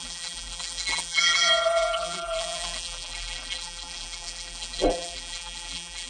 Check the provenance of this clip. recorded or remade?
remade